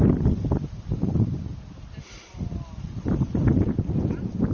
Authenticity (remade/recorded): recorded